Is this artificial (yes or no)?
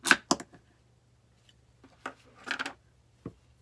no